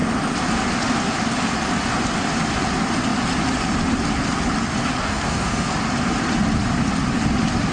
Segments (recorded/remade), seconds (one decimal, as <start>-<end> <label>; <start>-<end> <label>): 0.0-5.0 recorded; 5.0-5.7 remade; 5.7-7.7 recorded

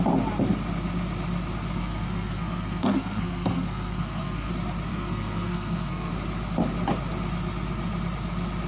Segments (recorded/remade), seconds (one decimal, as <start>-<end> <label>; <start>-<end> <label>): 0.0-1.8 recorded; 1.8-4.5 remade; 4.5-4.9 recorded; 4.9-6.1 remade; 6.1-8.7 recorded

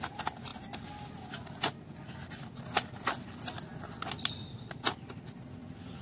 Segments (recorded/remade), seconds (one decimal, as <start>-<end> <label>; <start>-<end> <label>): 0.0-6.0 recorded

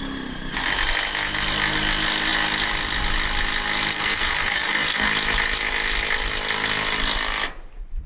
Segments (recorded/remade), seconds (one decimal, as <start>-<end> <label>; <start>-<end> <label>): 0.0-3.9 recorded; 3.9-5.1 remade; 5.1-8.1 recorded

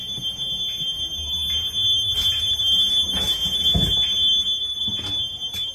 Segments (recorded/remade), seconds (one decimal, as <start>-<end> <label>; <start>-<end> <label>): 0.0-5.7 recorded

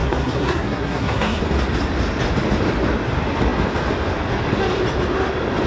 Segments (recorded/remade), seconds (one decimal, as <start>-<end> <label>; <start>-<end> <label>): 0.0-1.4 remade; 1.4-5.7 recorded